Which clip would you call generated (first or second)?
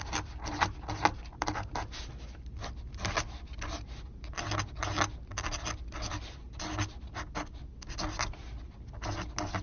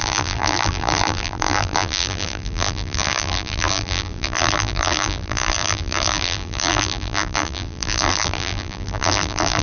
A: second